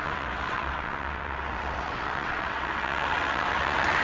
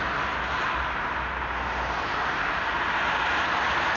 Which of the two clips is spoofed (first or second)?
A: first